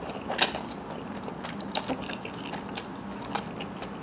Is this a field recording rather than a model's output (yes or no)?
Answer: yes